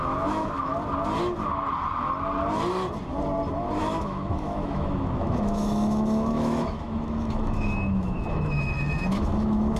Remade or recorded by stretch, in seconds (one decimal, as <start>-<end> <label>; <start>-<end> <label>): 0.0-0.7 remade; 0.7-3.8 recorded; 3.8-9.8 remade